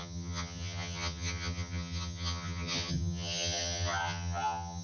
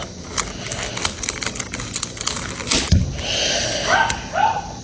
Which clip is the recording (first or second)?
second